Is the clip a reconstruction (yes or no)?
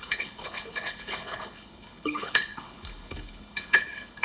yes